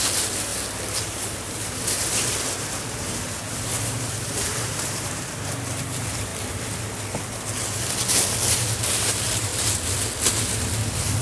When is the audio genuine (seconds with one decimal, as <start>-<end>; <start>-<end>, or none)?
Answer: 0.5-1.0; 6.3-8.5; 9.5-11.2